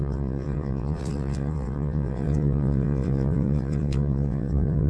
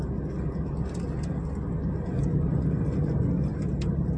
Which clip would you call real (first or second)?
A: second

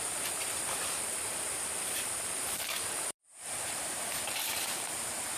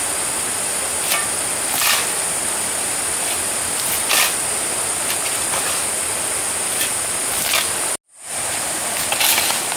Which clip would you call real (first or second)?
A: second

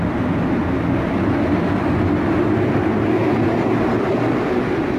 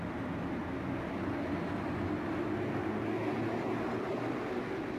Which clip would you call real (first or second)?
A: second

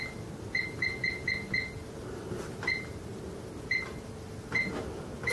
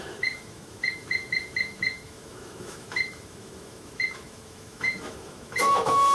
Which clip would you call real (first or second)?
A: first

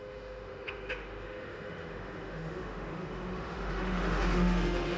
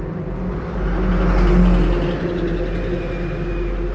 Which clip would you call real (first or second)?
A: second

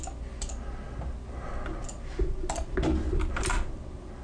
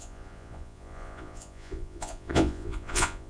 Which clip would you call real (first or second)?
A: first